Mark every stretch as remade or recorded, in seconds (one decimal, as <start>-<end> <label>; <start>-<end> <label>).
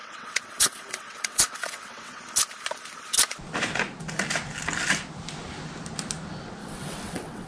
0.0-2.2 remade; 2.2-6.6 recorded; 6.6-7.5 remade